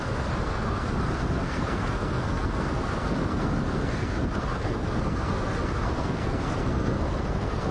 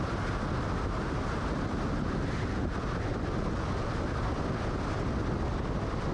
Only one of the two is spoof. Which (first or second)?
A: first